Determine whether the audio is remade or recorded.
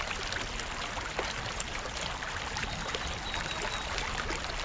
recorded